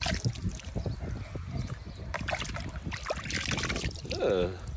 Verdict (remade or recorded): recorded